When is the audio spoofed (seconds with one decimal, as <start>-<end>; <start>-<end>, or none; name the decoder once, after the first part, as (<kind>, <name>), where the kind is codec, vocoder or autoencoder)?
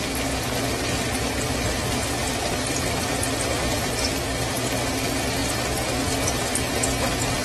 1.7-4.0 (vocoder, BigVGAN v2)